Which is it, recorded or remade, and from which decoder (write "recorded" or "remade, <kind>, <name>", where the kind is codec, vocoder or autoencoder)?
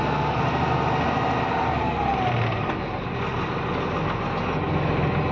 recorded